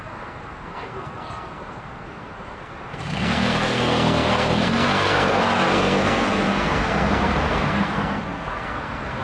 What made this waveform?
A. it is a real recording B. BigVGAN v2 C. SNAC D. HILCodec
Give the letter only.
C